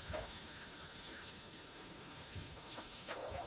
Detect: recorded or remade remade